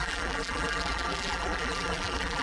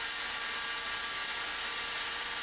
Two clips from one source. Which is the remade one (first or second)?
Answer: first